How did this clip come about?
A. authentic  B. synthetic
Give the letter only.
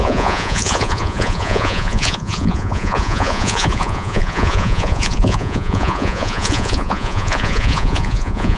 B